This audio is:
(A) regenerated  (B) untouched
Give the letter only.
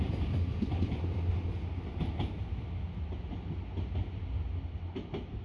B